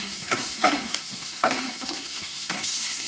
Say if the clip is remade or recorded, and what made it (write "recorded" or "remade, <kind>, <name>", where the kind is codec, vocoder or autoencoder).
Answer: remade, codec, SNAC